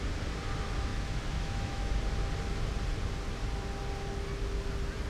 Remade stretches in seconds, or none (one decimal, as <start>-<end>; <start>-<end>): 0.9-1.9